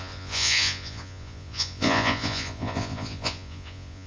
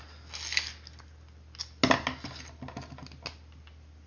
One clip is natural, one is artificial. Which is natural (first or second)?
second